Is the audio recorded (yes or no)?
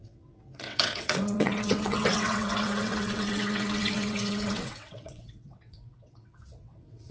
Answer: no